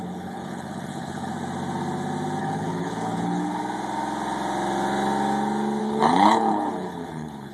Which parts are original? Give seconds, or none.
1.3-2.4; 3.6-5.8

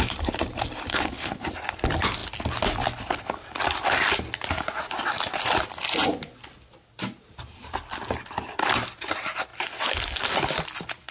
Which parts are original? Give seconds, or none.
0.0-0.9; 1.5-11.1

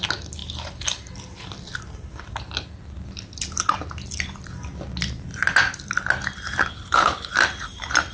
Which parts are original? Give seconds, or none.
0.0-6.7; 7.3-8.1

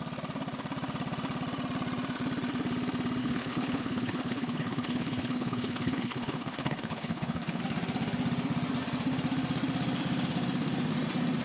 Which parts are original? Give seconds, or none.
0.0-3.2; 7.6-11.4

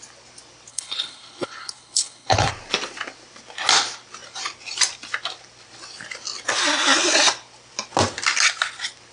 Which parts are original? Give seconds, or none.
0.0-0.7; 2.5-9.1

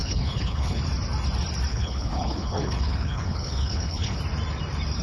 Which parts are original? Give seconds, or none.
0.8-1.7; 4.2-5.0

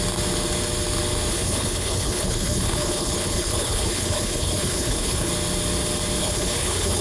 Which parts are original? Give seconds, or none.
0.0-1.3; 5.3-6.2